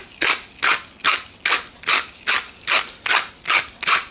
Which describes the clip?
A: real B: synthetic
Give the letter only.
A